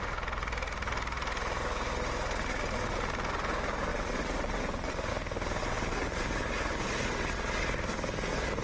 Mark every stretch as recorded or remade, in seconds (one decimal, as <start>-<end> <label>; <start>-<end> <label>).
0.0-3.9 recorded; 3.9-5.1 remade; 5.1-5.6 recorded; 5.6-6.2 remade; 6.2-8.6 recorded